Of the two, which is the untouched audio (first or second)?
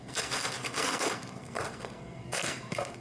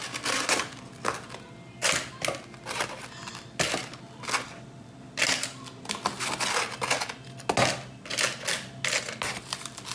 second